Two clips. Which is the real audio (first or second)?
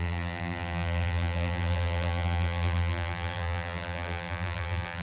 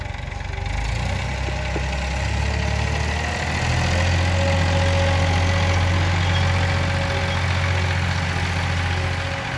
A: second